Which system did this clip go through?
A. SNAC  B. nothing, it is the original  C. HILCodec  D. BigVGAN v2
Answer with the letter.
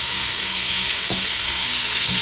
A